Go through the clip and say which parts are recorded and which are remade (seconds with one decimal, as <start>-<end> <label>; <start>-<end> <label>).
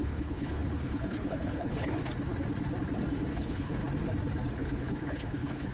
0.0-2.0 remade; 2.0-3.3 recorded; 3.3-3.8 remade; 3.8-4.5 recorded; 4.5-5.7 remade